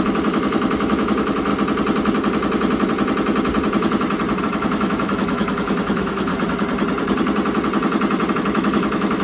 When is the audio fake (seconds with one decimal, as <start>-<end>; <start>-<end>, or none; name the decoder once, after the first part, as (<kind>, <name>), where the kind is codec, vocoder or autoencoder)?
0.0-1.5 (autoencoder, DAC-VAE); 4.4-6.3; 8.3-9.2